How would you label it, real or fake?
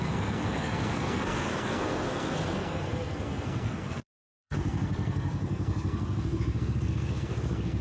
fake